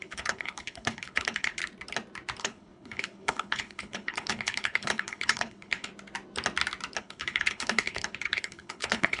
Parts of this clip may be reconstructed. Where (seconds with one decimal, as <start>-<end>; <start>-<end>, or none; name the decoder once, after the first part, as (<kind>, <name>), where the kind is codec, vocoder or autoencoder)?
0.0-1.6 (codec, HILCodec); 2.4-5.9; 7.0-9.2